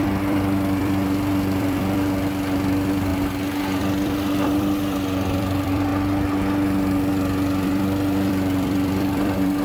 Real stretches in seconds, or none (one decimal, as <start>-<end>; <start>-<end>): 3.1-3.8; 5.9-7.1